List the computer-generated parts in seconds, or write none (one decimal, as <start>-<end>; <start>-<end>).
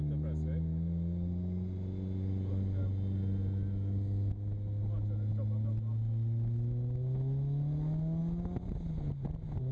none